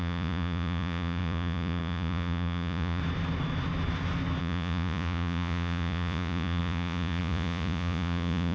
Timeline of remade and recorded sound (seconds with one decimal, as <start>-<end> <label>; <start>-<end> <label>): 0.0-3.0 remade; 3.0-4.4 recorded; 4.4-8.5 remade

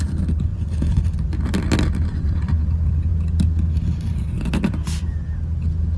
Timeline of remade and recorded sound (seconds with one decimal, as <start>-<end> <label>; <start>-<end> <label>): 0.0-0.5 recorded; 0.5-1.0 remade; 1.0-2.1 recorded; 2.1-2.6 remade; 2.6-6.0 recorded

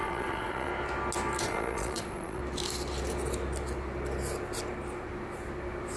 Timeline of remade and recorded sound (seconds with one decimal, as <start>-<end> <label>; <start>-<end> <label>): 0.0-0.7 remade; 0.7-1.4 recorded; 1.4-2.4 remade; 2.4-6.0 recorded

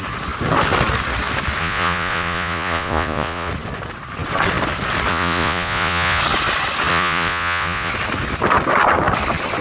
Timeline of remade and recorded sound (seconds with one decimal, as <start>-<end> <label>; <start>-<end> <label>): 0.0-1.6 recorded; 1.6-3.5 remade; 3.5-5.1 recorded; 5.1-6.2 remade; 6.2-6.9 recorded; 6.9-7.9 remade; 7.9-9.6 recorded

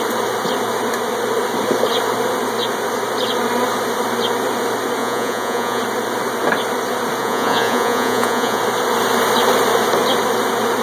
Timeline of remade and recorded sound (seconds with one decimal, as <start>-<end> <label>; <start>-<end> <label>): 0.0-5.0 recorded; 5.0-5.8 remade; 5.8-7.2 recorded; 7.2-8.6 remade; 8.6-10.8 recorded